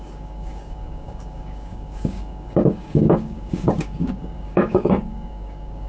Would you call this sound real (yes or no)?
no